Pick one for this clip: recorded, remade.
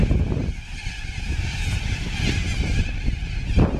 recorded